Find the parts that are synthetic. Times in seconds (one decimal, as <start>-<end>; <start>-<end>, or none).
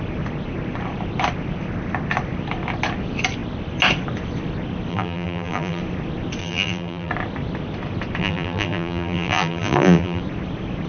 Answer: 4.9-5.8; 6.4-7.1; 8.2-10.2